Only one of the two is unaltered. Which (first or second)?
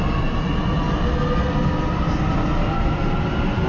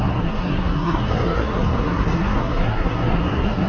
first